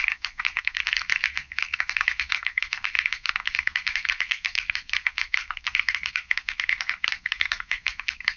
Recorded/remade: remade